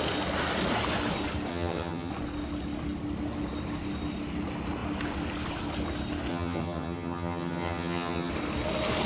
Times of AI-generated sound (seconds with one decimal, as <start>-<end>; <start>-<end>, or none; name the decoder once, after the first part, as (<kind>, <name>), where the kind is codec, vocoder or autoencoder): 1.5-2.1 (vocoder, HiFi-GAN); 6.3-8.3